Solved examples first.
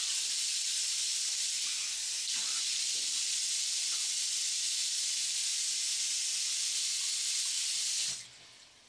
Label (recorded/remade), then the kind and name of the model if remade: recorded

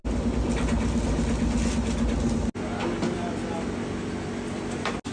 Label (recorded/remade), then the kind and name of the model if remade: recorded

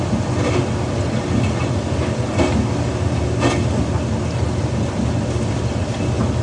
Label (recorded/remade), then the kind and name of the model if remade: recorded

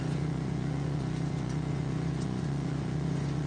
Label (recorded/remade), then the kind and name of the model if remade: remade, vocoder, Vocos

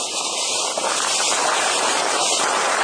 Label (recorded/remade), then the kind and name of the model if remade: recorded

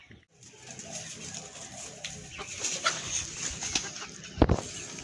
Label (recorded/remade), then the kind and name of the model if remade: recorded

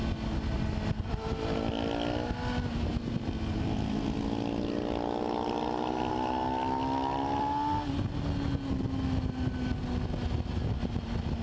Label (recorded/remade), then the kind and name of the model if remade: recorded